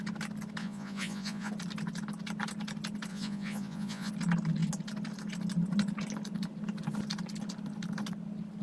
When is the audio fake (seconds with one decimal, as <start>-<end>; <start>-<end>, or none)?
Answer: 0.6-1.5; 3.1-4.1